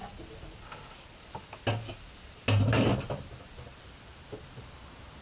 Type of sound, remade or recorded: recorded